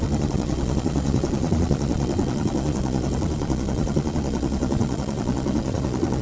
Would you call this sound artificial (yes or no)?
yes